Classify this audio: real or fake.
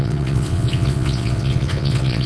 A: fake